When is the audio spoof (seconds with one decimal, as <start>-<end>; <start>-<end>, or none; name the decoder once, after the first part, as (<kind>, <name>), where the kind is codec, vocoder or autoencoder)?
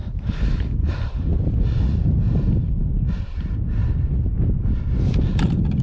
0.0-0.9 (vocoder, BigVGAN v2)